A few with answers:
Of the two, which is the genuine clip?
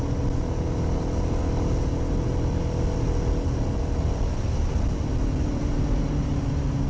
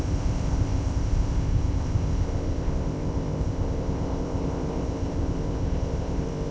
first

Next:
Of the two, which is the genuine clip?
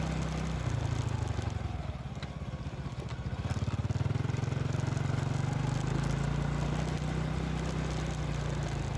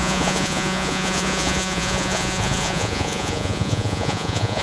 first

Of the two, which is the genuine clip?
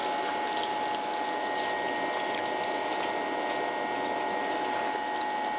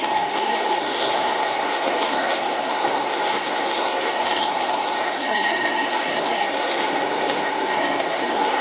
first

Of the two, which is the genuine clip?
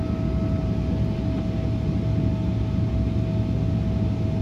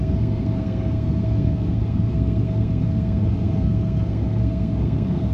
first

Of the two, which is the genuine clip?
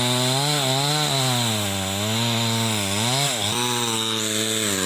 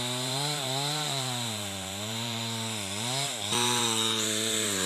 first